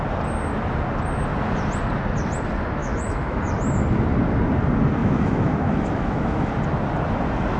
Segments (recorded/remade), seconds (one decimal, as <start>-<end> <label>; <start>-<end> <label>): 0.0-2.8 recorded; 2.8-3.4 remade; 3.4-5.0 recorded; 5.0-6.5 remade; 6.5-7.6 recorded